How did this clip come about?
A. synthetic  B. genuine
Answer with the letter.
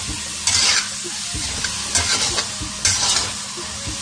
B